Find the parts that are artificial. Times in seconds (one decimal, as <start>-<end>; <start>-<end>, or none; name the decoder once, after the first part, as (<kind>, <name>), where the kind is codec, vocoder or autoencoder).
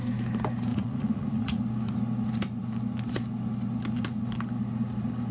0.7-1.6 (vocoder, Vocos)